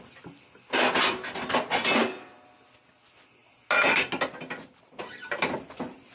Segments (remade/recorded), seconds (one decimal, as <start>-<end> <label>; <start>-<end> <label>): 0.0-6.1 recorded